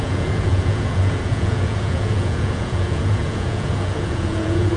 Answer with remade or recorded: remade